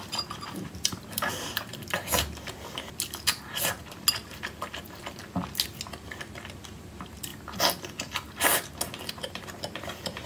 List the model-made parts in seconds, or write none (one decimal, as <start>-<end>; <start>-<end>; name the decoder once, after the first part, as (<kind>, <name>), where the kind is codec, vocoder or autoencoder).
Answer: 0.0-1.8 (vocoder, BigVGAN v2); 6.7-7.3; 9.1-10.3